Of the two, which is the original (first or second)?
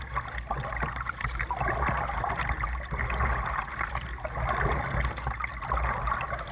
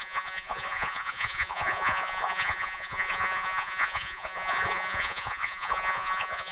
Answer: first